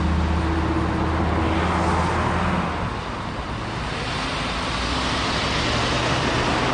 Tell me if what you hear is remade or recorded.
recorded